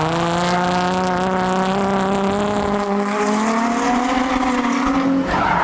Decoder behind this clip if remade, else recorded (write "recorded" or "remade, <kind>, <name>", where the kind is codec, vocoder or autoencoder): recorded